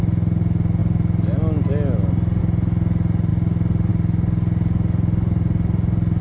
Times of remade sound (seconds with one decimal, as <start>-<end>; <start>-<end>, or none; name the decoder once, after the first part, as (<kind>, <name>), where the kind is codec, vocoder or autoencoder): none